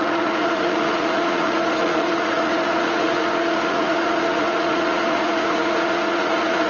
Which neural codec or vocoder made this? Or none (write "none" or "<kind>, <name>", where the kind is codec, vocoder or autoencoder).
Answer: vocoder, Vocos